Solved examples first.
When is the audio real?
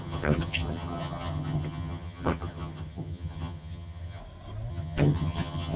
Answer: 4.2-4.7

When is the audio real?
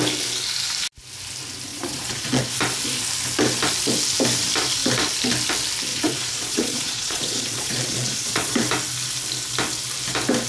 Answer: 0.0-1.7; 2.4-5.9; 8.6-10.5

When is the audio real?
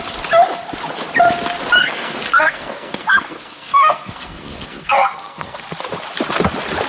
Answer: 0.0-1.8; 5.6-6.9